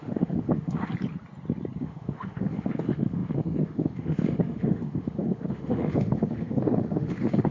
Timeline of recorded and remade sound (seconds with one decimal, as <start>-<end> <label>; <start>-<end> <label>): 0.0-0.9 remade; 0.9-1.8 recorded; 1.8-7.5 remade